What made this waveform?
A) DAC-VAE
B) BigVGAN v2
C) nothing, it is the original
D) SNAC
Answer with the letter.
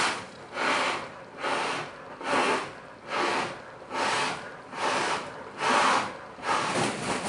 C